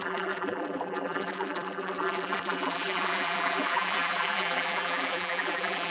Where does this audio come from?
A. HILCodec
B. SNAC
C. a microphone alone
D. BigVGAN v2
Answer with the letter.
D